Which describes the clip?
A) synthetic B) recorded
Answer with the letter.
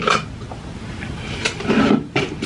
A